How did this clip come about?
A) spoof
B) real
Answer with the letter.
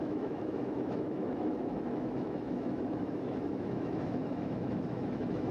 A